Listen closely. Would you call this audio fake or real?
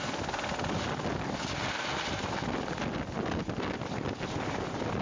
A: real